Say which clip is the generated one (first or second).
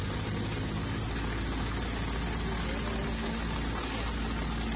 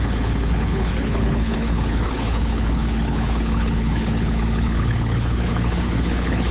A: second